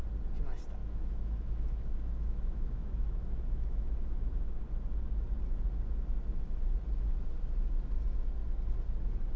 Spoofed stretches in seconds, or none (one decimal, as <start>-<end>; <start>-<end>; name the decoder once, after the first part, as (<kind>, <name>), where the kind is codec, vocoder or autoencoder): 0.8-4.6 (autoencoder, DAC-VAE)